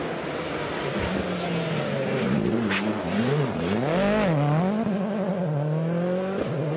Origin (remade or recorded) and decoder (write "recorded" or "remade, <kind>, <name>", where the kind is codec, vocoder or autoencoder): recorded